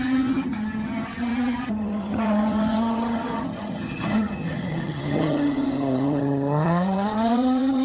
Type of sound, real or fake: fake